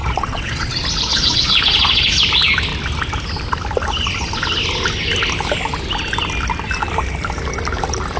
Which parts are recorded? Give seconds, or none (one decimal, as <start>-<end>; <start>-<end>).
0.7-1.1; 2.2-8.2